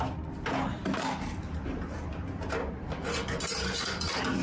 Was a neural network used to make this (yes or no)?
no